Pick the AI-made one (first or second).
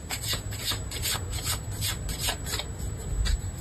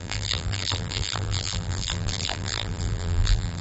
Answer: second